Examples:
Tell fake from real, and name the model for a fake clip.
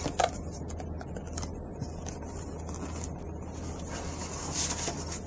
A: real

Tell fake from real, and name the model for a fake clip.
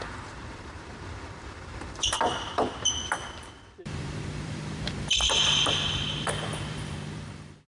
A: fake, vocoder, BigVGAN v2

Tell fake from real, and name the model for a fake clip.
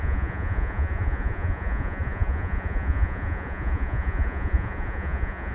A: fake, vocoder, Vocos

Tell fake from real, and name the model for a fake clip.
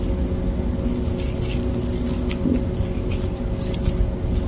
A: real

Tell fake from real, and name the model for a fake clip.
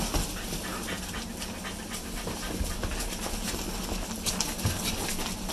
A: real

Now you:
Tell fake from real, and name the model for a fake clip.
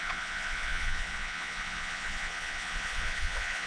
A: fake, vocoder, Vocos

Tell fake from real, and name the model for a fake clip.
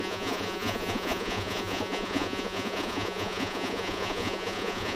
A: fake, vocoder, Vocos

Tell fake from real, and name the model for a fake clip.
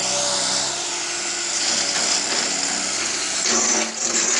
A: real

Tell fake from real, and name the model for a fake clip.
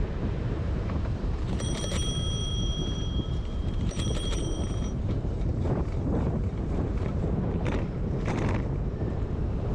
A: fake, vocoder, BigVGAN v2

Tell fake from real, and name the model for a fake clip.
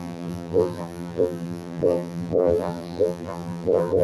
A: fake, vocoder, BigVGAN v2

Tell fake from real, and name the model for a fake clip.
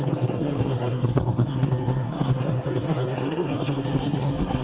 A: fake, codec, SNAC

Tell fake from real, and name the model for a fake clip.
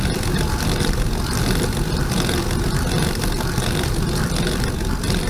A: real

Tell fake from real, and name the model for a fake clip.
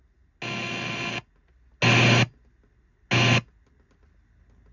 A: real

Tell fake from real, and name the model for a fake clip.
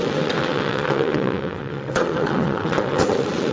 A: fake, vocoder, WaveNeXt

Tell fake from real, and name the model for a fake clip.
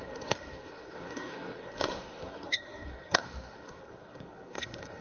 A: fake, codec, SNAC